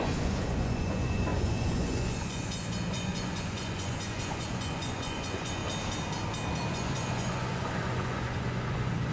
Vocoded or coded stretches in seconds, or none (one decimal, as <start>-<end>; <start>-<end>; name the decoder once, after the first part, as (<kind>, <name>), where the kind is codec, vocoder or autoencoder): 0.0-5.6 (vocoder, Vocos); 6.7-9.1